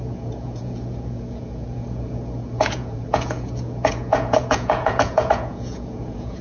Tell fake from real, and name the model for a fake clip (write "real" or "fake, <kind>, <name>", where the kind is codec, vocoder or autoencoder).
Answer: fake, vocoder, Vocos